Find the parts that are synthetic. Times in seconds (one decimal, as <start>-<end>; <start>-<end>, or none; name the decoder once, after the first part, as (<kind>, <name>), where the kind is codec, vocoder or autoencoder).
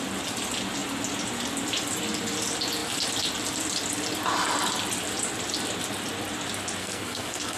6.8-7.6 (codec, SNAC)